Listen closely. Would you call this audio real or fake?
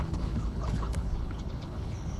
fake